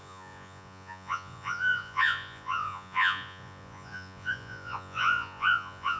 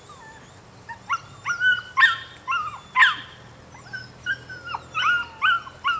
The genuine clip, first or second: second